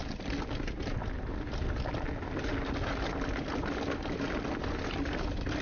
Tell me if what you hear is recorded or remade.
recorded